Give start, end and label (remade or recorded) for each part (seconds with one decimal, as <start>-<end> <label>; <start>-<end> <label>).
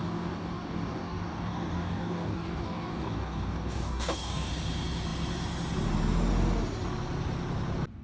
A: 0.0-4.5 remade; 4.5-8.0 recorded